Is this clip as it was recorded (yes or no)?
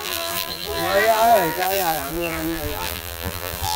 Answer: no